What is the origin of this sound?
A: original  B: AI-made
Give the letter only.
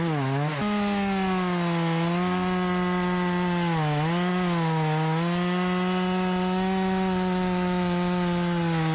A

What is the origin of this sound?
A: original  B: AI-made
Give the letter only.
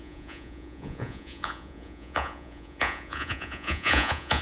B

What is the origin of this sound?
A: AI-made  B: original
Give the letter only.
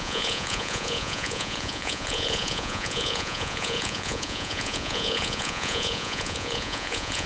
A